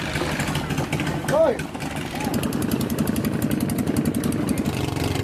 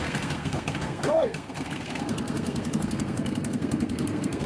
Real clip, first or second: first